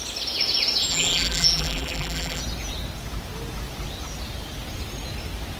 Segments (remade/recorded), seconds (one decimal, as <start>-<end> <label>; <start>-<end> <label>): 0.0-0.9 recorded; 0.9-2.4 remade; 2.4-5.6 recorded